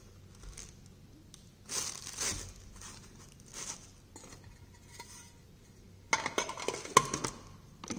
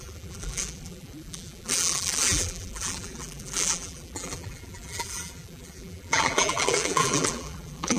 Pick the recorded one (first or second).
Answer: first